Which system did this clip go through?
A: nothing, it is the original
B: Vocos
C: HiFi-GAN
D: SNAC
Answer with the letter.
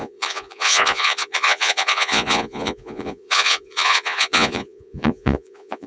B